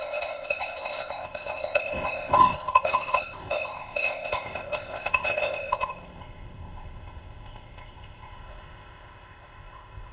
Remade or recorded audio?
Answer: remade